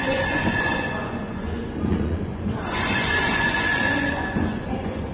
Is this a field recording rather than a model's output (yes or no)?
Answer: no